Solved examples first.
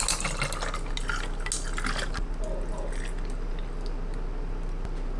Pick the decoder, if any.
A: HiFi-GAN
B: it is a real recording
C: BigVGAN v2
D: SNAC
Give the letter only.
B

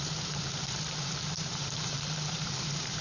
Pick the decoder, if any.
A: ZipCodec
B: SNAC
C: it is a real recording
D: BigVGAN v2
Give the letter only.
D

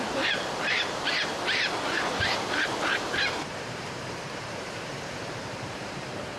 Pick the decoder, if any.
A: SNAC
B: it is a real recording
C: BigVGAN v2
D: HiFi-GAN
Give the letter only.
C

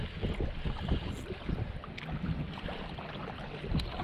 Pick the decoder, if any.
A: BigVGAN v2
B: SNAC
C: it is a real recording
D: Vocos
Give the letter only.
C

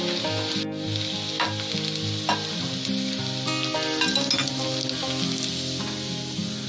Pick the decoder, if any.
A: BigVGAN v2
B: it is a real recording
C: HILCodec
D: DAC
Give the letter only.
B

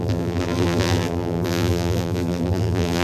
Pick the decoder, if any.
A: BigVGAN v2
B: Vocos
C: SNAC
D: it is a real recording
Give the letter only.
A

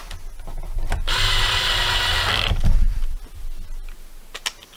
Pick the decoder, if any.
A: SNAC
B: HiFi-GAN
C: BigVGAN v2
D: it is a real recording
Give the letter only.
D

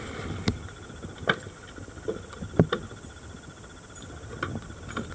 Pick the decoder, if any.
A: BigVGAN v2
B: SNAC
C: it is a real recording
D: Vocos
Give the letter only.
C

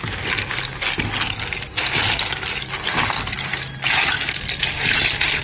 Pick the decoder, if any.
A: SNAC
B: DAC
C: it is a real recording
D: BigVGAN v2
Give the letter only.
C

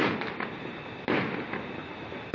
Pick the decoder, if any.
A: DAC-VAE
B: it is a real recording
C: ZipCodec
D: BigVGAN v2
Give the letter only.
B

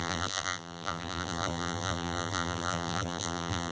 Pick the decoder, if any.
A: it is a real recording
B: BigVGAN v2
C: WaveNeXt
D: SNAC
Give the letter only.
B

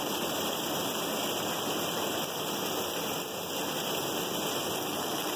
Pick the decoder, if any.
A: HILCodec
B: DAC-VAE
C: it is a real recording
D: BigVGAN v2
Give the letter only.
C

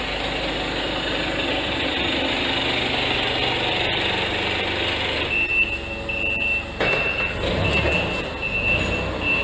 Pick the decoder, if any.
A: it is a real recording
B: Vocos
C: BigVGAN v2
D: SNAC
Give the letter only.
A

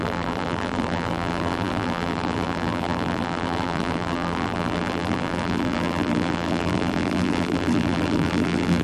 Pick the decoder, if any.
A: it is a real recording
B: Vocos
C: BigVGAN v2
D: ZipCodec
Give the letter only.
C